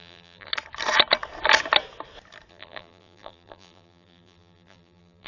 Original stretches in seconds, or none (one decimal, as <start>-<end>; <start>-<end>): 0.5-2.5